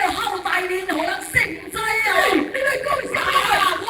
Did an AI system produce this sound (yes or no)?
yes